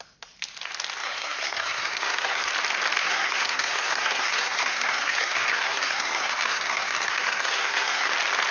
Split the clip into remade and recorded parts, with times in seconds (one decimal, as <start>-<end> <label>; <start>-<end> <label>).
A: 0.0-1.0 recorded; 1.0-2.5 remade; 2.5-3.0 recorded; 3.0-8.1 remade; 8.1-8.5 recorded